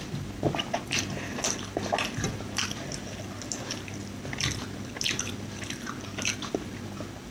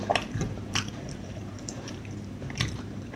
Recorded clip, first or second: first